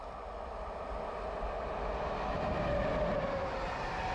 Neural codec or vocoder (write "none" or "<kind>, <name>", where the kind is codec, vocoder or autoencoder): none